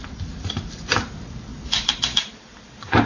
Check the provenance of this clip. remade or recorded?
recorded